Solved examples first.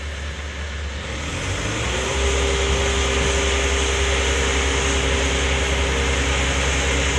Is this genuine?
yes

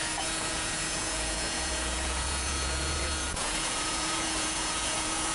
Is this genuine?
no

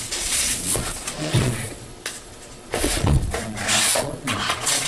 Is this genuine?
no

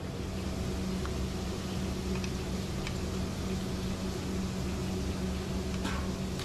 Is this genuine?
yes